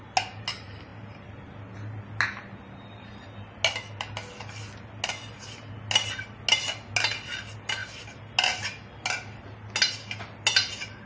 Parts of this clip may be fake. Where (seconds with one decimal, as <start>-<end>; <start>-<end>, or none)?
none